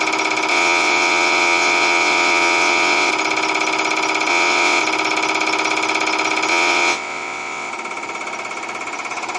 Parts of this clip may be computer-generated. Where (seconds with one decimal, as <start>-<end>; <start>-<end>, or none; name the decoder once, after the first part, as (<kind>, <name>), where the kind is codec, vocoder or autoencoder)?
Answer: 0.5-3.1 (vocoder, WaveNeXt); 4.3-4.8; 6.5-7.7

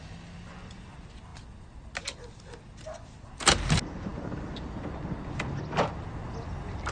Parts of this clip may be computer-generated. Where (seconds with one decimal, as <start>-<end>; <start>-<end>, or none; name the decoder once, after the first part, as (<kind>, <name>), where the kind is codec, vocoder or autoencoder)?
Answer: none

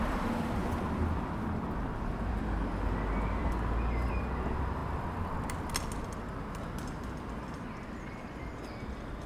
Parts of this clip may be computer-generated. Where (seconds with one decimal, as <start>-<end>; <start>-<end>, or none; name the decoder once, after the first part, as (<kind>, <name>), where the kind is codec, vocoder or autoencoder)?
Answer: none